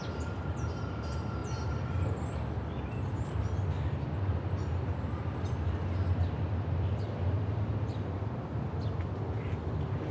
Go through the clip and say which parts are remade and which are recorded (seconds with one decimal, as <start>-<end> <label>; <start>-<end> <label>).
0.0-10.1 recorded

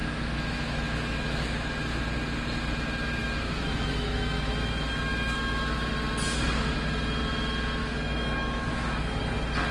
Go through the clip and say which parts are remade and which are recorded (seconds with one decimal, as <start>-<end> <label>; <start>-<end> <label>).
0.0-2.0 remade; 2.0-3.2 recorded; 3.2-5.9 remade; 5.9-7.8 recorded; 7.8-9.2 remade; 9.2-9.7 recorded

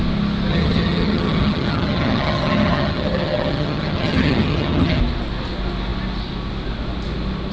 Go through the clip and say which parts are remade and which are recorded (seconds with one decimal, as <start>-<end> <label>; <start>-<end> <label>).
0.0-0.5 recorded; 0.5-5.0 remade; 5.0-7.5 recorded